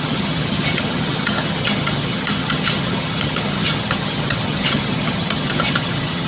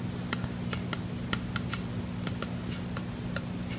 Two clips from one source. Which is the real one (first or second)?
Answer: second